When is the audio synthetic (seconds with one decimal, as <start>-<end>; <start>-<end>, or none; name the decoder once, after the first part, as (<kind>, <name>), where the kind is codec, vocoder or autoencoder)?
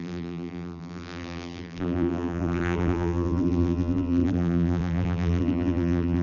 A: 0.0-6.2 (vocoder, BigVGAN v2)